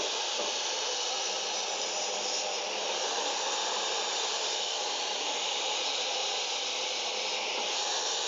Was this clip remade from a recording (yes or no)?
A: yes